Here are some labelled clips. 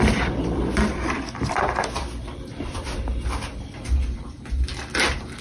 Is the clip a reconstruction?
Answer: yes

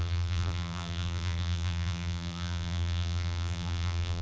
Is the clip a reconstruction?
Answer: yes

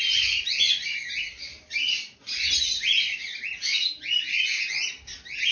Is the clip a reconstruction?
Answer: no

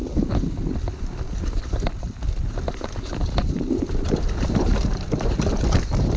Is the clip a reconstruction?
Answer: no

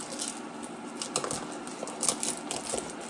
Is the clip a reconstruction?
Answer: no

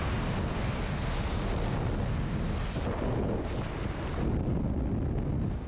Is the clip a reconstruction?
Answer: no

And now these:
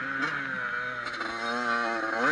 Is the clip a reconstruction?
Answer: no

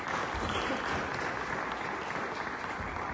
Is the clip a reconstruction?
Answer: no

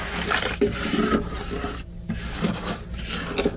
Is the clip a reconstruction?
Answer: no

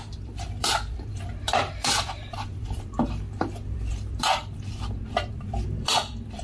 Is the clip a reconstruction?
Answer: yes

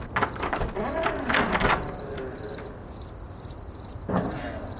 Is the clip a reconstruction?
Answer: no